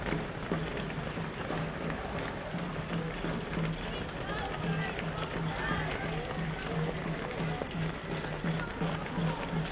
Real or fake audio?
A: real